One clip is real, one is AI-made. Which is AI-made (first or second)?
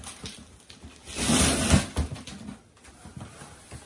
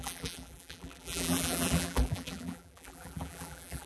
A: second